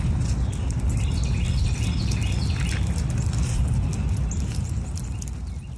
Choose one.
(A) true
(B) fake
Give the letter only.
A